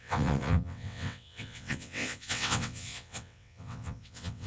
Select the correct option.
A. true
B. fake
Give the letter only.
B